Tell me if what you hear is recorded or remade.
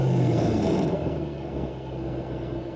remade